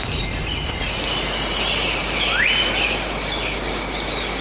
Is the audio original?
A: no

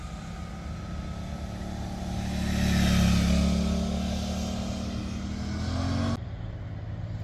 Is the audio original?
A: yes